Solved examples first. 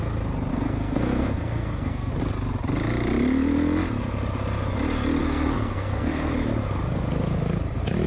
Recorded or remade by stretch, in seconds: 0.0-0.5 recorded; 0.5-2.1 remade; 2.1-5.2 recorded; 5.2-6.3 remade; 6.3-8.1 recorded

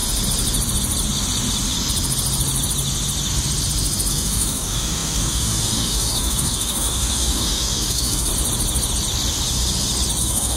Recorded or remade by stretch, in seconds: 0.0-4.1 recorded; 4.1-8.3 remade; 8.3-10.2 recorded; 10.2-10.6 remade

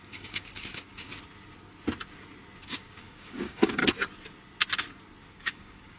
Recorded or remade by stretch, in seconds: 0.0-1.1 remade; 1.1-2.6 recorded; 2.6-3.8 remade; 3.8-5.2 recorded; 5.2-6.0 remade

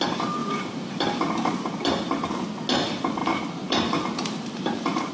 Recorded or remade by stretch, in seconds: 0.0-0.4 recorded; 0.4-1.0 remade; 1.0-1.5 recorded; 1.5-2.4 remade; 2.4-3.2 recorded; 3.2-5.1 remade

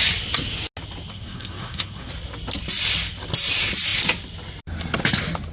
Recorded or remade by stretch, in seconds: 0.0-1.1 recorded; 1.1-2.1 remade; 2.1-5.5 recorded

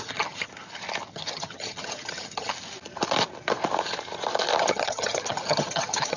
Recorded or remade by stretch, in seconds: 0.0-0.5 remade; 0.5-1.1 recorded; 1.1-2.5 remade; 2.5-4.7 recorded; 4.7-6.2 remade

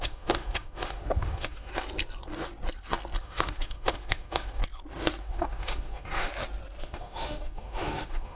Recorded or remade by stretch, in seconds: 0.0-1.7 remade; 1.7-3.2 recorded; 3.2-4.6 remade; 4.6-5.2 recorded; 5.2-6.3 remade; 6.3-6.8 recorded; 6.8-8.4 remade

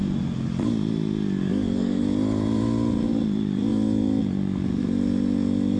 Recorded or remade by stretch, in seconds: 0.0-1.4 recorded; 1.4-2.0 remade; 2.0-5.8 recorded